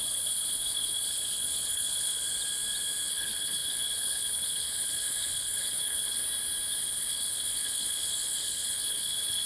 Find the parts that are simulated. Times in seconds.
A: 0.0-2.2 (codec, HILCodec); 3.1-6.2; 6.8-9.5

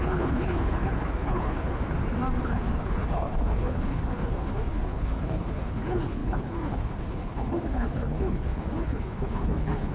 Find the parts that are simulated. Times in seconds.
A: 0.0-1.8 (codec, HILCodec); 2.4-9.9

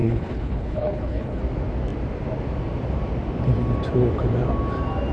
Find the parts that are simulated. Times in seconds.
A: 0.0-1.4 (codec, HILCodec)

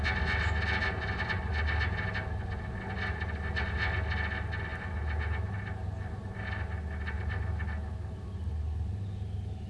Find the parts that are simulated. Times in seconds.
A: none